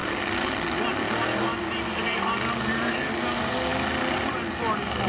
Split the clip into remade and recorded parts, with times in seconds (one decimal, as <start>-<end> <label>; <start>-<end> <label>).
0.0-5.1 recorded